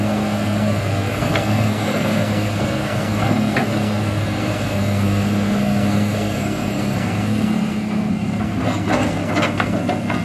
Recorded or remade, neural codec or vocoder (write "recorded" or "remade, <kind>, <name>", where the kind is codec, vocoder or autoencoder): remade, codec, SNAC